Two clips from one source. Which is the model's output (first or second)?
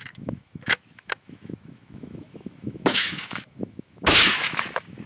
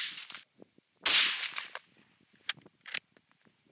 first